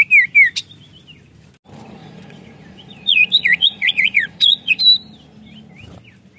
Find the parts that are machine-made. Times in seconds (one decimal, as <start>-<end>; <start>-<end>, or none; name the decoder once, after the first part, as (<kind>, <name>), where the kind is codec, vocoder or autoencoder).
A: 2.0-4.8 (vocoder, Vocos)